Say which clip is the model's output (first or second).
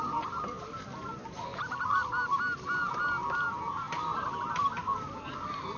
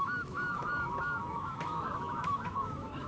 second